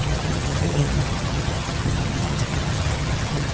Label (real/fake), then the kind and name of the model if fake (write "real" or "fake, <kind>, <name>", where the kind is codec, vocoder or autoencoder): fake, vocoder, HiFi-GAN